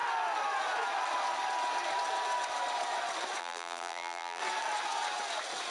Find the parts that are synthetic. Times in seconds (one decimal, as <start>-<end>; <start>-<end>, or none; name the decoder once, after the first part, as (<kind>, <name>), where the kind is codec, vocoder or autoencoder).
3.4-4.4 (vocoder, BigVGAN v2)